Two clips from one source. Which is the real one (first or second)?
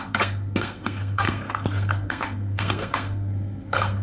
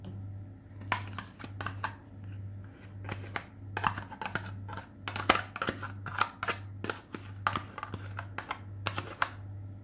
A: second